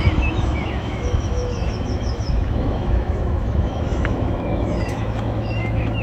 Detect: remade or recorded remade